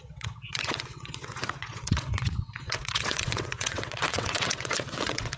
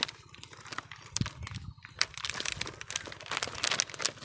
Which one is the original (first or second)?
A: second